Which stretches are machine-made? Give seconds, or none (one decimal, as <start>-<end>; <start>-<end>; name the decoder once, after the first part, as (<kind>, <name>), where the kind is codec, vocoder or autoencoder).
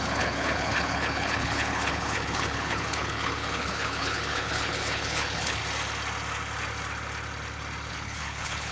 0.0-5.6 (codec, HILCodec); 7.9-8.7